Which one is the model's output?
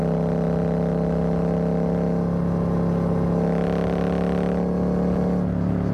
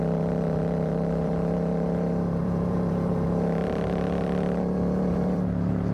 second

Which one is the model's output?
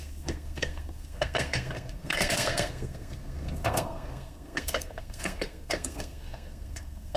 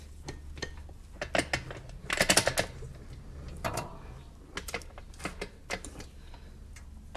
first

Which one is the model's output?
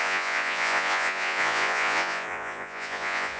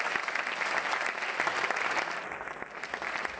first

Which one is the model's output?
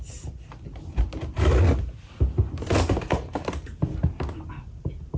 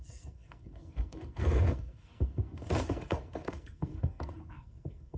second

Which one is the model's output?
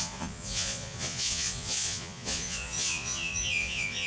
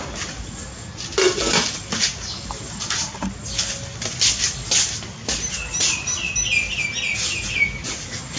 first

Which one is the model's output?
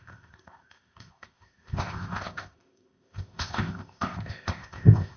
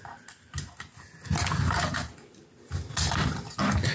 first